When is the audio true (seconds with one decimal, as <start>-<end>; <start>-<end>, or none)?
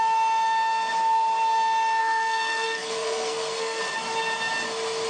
0.0-2.0; 3.8-5.1